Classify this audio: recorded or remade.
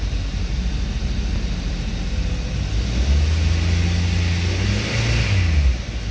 recorded